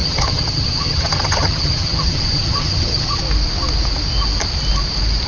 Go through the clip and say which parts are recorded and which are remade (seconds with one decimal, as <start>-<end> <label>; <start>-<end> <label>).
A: 0.0-3.2 remade; 3.2-5.3 recorded